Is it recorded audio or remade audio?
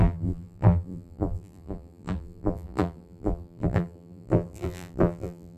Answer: remade